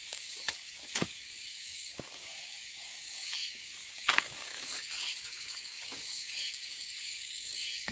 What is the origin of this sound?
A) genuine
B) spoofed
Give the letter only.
B